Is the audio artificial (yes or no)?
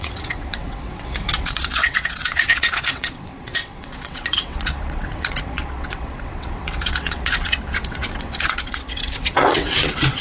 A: yes